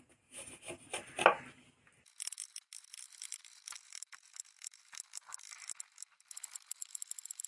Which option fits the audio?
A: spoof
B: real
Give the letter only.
B